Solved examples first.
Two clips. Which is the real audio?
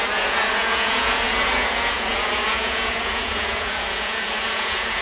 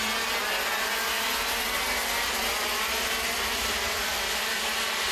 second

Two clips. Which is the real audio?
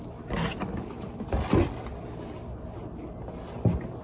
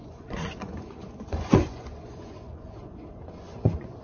first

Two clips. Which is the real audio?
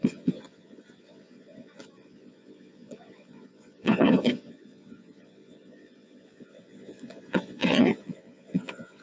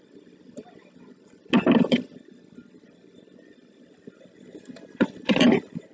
second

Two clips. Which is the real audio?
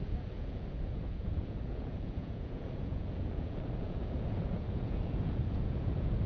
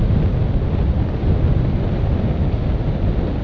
second